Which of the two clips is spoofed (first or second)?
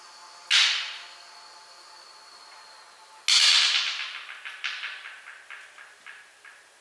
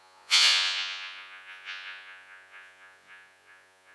second